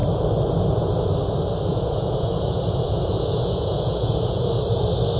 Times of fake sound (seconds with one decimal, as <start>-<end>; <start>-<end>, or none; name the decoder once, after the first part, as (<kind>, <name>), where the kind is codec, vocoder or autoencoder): 1.7-4.5 (vocoder, Vocos)